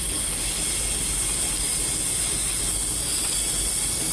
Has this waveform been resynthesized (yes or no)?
no